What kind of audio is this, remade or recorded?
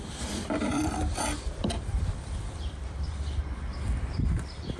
remade